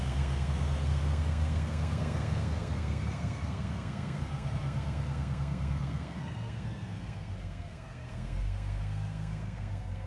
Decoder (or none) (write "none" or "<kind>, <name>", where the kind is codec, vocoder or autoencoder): codec, SNAC